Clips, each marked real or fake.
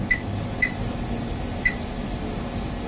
fake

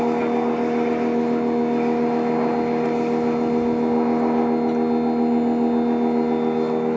real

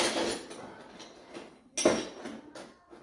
real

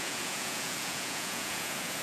fake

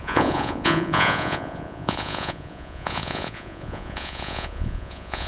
fake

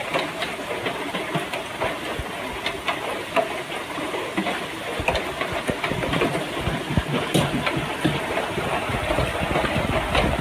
real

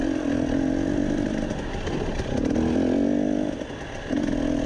real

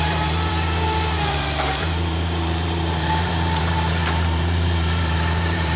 fake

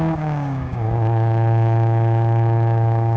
fake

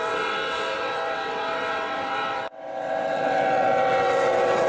fake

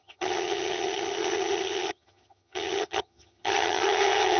fake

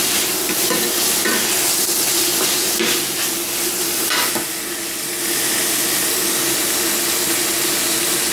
real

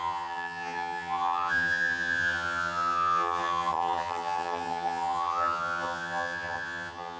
fake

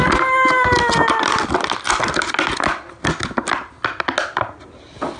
real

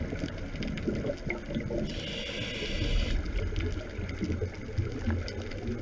real